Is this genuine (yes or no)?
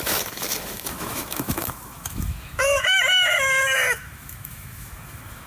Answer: no